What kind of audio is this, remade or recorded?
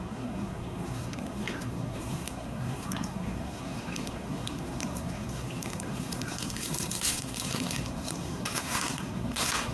remade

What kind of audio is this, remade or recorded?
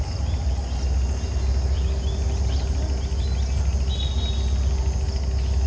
recorded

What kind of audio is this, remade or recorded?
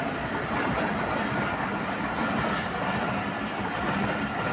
recorded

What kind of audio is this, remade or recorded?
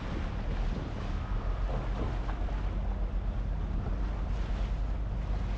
recorded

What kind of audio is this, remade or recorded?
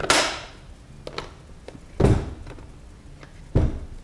recorded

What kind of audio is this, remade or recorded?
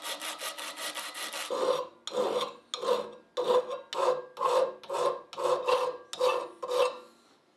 recorded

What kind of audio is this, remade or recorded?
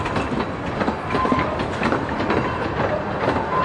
recorded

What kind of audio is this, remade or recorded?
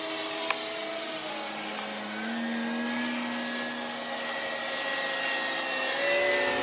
recorded